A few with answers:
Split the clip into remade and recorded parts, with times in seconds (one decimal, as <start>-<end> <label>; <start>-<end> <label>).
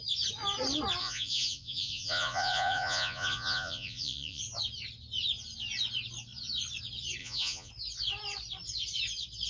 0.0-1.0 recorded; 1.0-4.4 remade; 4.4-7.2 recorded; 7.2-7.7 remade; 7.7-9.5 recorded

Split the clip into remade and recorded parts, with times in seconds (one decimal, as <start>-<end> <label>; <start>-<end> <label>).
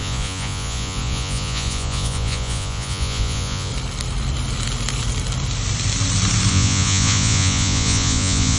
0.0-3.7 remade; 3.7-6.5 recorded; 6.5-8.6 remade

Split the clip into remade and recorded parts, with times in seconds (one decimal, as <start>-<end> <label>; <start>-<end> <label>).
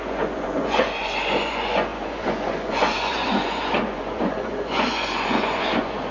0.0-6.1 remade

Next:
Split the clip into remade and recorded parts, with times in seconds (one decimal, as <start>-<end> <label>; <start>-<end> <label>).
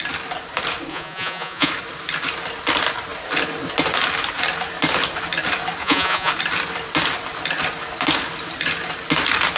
0.0-0.9 recorded; 0.9-1.7 remade; 1.7-5.8 recorded; 5.8-6.3 remade; 6.3-9.6 recorded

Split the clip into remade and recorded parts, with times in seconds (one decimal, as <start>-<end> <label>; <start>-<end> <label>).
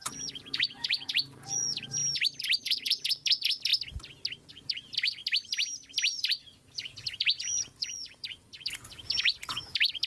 0.0-2.0 remade; 2.0-2.6 recorded; 2.6-3.7 remade; 3.7-4.4 recorded; 4.4-5.2 remade; 5.2-6.3 recorded; 6.3-10.1 remade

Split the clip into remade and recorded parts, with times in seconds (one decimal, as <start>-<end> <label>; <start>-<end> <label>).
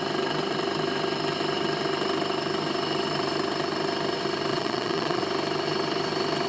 0.0-4.5 recorded; 4.5-5.2 remade; 5.2-6.5 recorded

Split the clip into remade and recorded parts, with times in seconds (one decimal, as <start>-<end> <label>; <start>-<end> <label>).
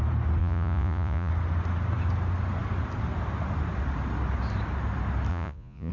0.0-0.4 recorded; 0.4-1.3 remade; 1.3-5.3 recorded; 5.3-5.9 remade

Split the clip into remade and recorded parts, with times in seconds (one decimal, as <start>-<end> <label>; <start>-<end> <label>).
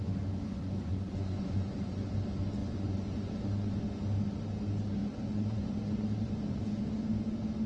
0.0-0.4 recorded; 0.4-2.1 remade; 2.1-2.6 recorded; 2.6-3.8 remade; 3.8-5.0 recorded; 5.0-6.8 remade; 6.8-7.7 recorded